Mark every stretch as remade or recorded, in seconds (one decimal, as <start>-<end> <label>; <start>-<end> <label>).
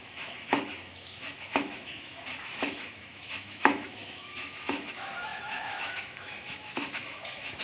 0.0-7.6 remade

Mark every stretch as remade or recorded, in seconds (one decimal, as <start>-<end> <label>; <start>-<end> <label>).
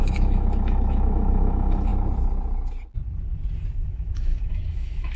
0.0-1.9 remade; 1.9-3.7 recorded; 3.7-5.2 remade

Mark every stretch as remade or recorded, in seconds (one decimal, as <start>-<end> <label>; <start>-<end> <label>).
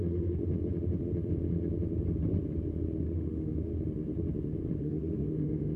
0.0-0.4 remade; 0.4-3.0 recorded; 3.0-3.7 remade; 3.7-4.8 recorded; 4.8-5.8 remade